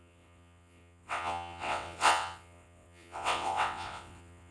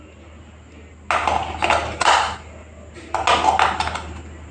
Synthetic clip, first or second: first